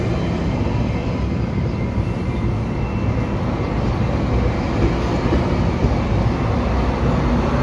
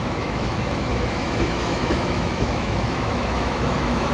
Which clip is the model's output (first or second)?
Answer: second